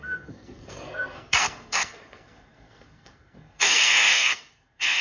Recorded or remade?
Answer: remade